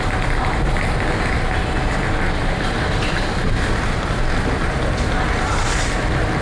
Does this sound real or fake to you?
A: real